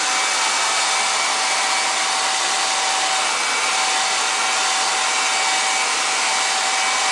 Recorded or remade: recorded